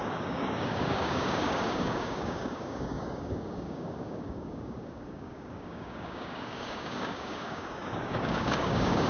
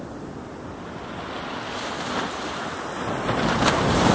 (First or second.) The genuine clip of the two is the second